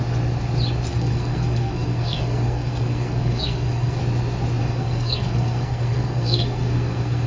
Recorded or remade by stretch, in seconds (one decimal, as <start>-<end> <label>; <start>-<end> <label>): 0.0-0.9 recorded; 0.9-4.0 remade; 4.0-4.6 recorded; 4.6-7.3 remade